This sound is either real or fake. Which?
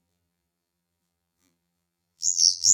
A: fake